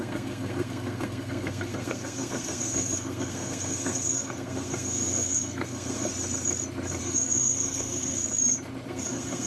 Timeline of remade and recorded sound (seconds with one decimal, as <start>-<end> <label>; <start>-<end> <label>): 0.0-6.1 remade; 6.1-7.0 recorded; 7.0-8.2 remade; 8.2-8.9 recorded; 8.9-9.5 remade